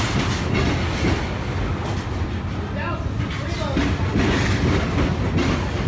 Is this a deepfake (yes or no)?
no